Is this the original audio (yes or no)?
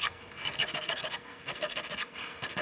no